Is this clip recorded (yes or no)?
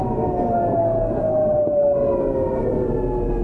yes